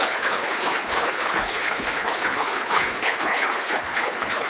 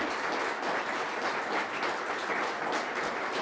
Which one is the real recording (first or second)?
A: second